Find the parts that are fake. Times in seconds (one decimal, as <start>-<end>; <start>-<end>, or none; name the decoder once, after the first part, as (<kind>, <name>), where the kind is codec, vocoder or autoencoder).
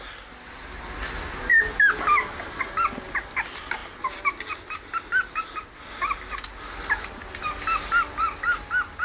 none